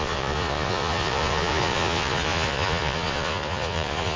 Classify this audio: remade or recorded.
remade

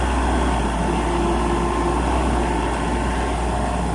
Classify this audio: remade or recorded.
recorded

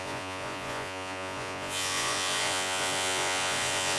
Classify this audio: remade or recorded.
remade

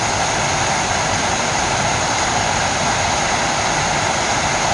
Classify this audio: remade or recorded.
recorded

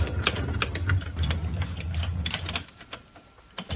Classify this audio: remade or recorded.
recorded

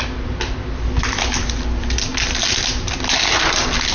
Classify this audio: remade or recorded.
recorded